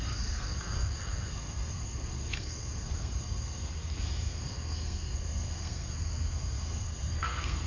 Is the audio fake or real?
fake